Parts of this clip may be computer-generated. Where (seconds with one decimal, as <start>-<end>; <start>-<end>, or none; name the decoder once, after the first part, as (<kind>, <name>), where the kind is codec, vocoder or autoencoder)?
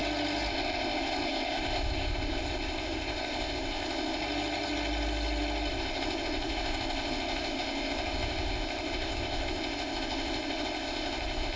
0.5-4.2 (codec, ZipCodec); 5.7-11.6